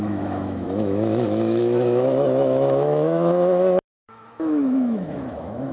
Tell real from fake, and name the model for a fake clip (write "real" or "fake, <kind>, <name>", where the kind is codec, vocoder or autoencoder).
fake, autoencoder, DAC-VAE